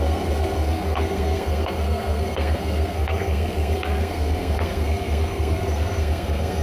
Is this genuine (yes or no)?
no